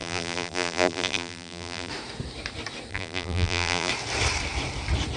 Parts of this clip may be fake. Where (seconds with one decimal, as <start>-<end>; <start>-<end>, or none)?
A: 0.0-1.9; 2.9-3.9